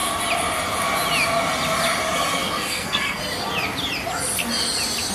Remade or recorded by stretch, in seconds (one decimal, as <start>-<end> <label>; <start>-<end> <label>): 0.0-2.4 recorded; 2.4-3.2 remade; 3.2-5.1 recorded